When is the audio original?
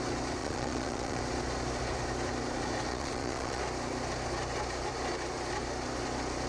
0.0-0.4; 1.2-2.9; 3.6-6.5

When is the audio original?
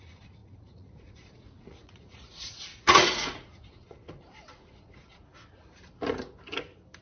5.1-7.0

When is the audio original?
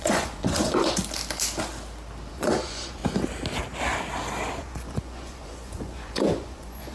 1.0-2.3; 3.0-4.6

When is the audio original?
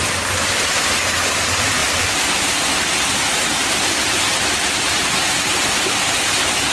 0.0-6.7